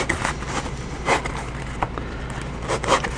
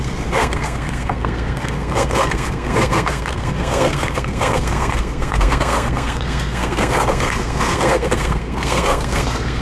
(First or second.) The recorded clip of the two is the first